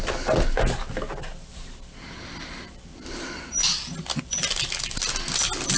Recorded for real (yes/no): yes